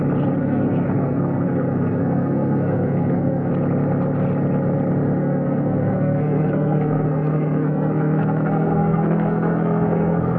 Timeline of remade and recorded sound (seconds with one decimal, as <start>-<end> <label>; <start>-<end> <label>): 0.0-0.4 recorded; 0.4-3.5 remade; 3.5-5.2 recorded; 5.2-10.4 remade